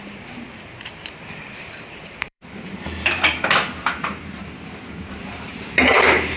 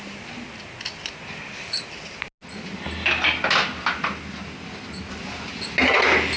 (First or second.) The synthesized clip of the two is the first